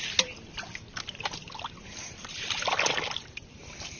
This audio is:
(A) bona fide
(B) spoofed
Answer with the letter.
A